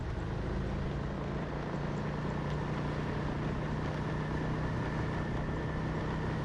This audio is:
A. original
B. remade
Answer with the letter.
A